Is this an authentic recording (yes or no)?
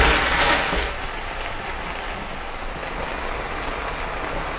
yes